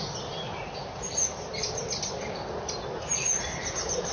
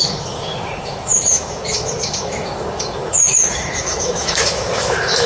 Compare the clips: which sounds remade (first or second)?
second